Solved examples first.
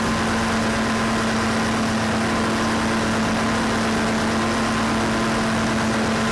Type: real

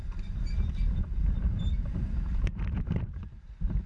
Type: fake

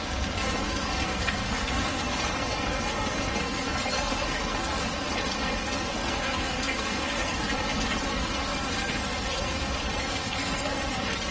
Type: fake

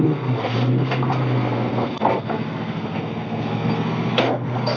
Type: fake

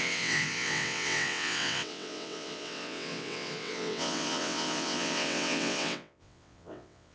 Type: fake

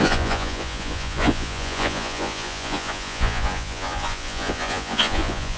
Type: fake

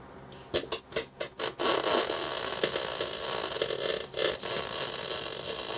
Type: real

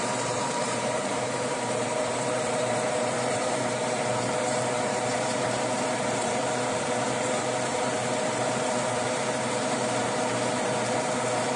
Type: fake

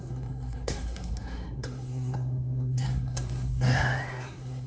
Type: fake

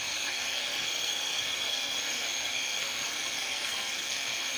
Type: fake